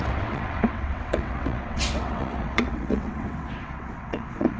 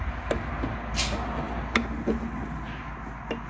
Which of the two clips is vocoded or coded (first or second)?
first